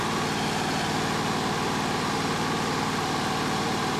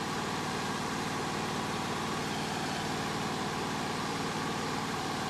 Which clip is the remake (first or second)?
second